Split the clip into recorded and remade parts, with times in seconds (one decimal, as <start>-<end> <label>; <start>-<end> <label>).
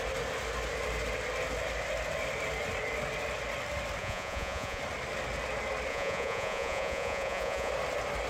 0.0-4.0 recorded; 4.0-4.8 remade; 4.8-5.9 recorded; 5.9-7.7 remade; 7.7-8.3 recorded